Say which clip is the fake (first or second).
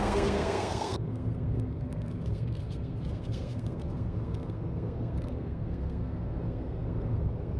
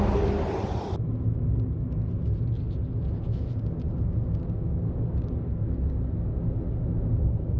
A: first